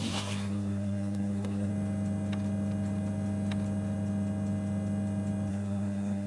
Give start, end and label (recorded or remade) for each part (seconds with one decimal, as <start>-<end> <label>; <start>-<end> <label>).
0.0-1.7 remade; 1.7-5.5 recorded; 5.5-6.3 remade